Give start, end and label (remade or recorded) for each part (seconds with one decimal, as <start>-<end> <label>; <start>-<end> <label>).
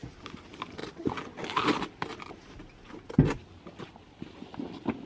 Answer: 0.0-5.1 recorded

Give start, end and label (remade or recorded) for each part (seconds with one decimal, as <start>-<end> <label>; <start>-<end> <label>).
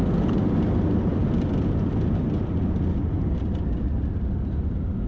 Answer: 0.0-1.1 recorded; 1.1-4.1 remade; 4.1-5.1 recorded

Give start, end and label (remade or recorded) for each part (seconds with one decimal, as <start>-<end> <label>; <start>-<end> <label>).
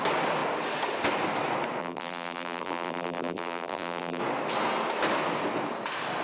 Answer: 0.0-1.8 recorded; 1.8-4.2 remade; 4.2-6.2 recorded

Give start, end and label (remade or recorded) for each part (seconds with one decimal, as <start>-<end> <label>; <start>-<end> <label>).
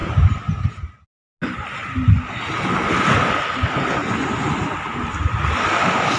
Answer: 0.0-6.2 recorded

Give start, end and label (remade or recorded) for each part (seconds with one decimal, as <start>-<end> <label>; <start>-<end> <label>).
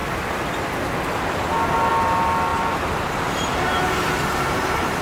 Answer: 0.0-2.5 recorded; 2.5-5.0 remade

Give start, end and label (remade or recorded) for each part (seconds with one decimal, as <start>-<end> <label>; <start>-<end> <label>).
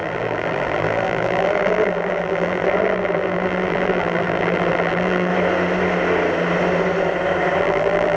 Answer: 0.0-5.3 remade; 5.3-7.6 recorded; 7.6-8.2 remade